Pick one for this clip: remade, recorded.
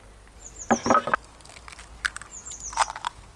recorded